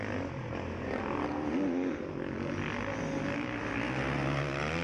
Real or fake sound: real